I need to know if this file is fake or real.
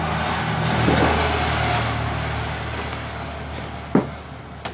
real